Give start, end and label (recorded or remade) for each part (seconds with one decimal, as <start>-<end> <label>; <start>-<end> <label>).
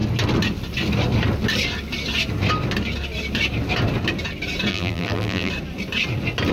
0.0-4.7 recorded; 4.7-5.5 remade; 5.5-6.5 recorded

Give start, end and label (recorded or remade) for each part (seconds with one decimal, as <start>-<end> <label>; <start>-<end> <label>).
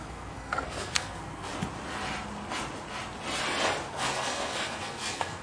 0.0-1.5 remade; 1.5-3.9 recorded; 3.9-5.4 remade